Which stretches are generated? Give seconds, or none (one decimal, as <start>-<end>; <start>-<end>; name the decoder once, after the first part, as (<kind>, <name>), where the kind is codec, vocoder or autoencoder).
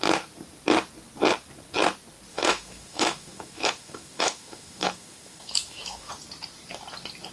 2.3-6.1 (autoencoder, DAC-VAE)